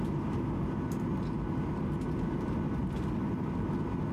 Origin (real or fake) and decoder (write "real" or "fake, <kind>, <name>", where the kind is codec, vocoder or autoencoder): real